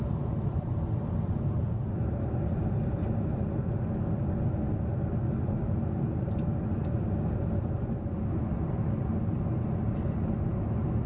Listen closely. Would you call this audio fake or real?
real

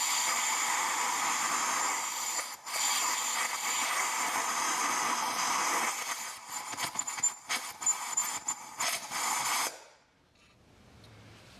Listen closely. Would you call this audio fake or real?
real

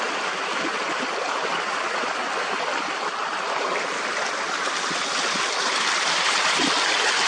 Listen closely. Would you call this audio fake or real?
real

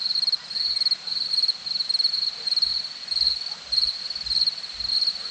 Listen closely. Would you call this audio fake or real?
real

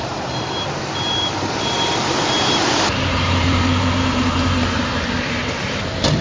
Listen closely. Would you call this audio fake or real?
fake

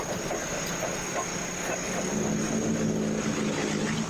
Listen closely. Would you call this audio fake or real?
real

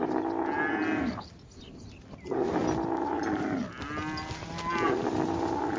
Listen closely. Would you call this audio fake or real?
real